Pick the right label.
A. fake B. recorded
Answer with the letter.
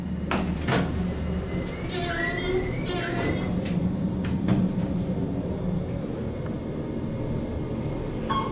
B